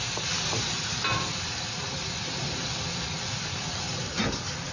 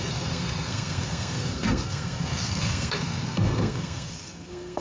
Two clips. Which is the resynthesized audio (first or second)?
second